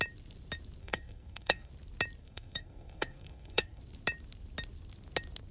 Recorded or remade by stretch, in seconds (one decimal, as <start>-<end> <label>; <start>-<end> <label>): 0.0-0.8 recorded; 0.8-1.7 remade; 1.7-2.2 recorded; 2.2-3.8 remade; 3.8-5.5 recorded

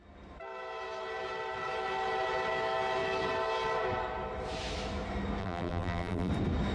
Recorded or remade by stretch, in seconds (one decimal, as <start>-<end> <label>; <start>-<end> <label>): 0.0-5.4 recorded; 5.4-6.3 remade; 6.3-6.7 recorded

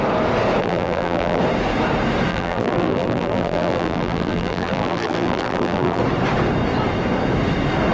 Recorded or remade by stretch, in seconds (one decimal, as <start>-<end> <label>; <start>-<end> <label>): 0.0-0.6 recorded; 0.6-1.4 remade; 1.4-2.3 recorded; 2.3-6.0 remade; 6.0-7.9 recorded

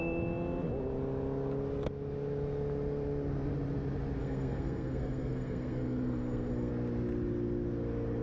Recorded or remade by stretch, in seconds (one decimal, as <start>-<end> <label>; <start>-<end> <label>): 0.0-4.2 recorded; 4.2-6.7 remade; 6.7-8.2 recorded

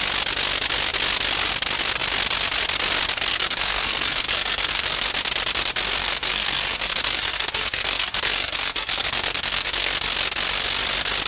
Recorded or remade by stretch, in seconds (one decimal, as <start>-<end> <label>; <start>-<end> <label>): 0.0-3.3 recorded; 3.3-5.0 remade; 5.0-6.0 recorded; 6.0-9.9 remade; 9.9-11.3 recorded

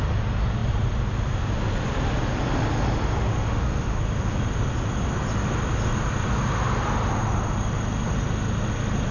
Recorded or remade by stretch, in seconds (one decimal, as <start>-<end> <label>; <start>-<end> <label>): 0.0-3.3 recorded; 3.3-4.0 remade; 4.0-9.1 recorded